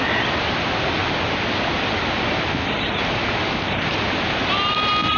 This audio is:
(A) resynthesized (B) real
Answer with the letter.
B